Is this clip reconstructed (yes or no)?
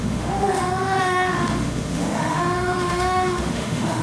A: yes